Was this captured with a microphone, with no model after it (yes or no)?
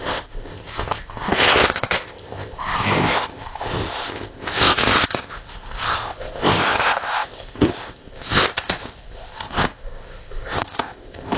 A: no